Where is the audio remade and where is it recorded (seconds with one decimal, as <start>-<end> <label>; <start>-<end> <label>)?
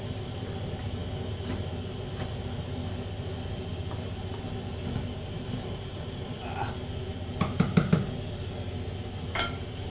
0.0-1.0 remade; 1.0-4.8 recorded; 4.8-6.2 remade; 6.2-9.0 recorded; 9.0-9.9 remade